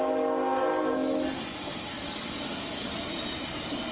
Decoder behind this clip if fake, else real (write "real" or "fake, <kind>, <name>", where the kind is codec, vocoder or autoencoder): real